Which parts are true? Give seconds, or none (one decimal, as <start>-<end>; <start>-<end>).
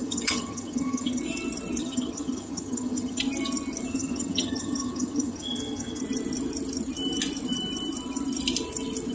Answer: 1.2-1.8; 3.2-3.9; 6.0-9.1